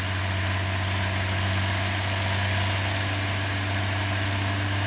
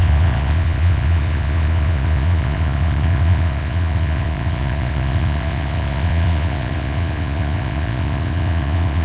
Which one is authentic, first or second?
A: first